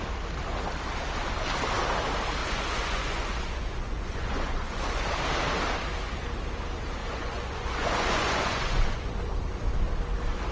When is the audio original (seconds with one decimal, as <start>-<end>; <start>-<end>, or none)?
0.0-2.4; 5.1-7.0; 9.1-10.5